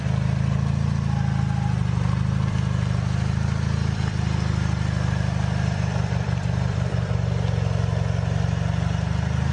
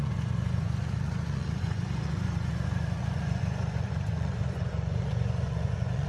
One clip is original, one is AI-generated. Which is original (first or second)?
first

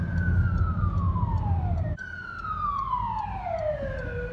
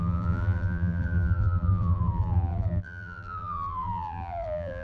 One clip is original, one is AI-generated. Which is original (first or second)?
first